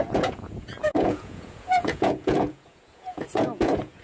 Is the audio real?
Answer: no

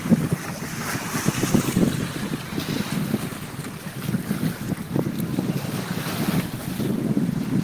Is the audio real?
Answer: yes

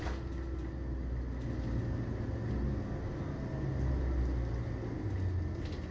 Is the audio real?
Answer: yes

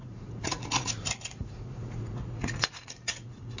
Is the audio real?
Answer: no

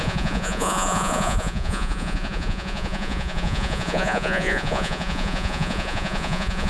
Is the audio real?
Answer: no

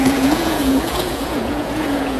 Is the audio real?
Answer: no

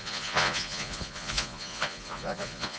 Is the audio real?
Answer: no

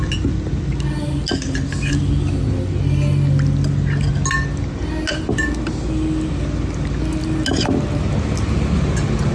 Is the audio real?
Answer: yes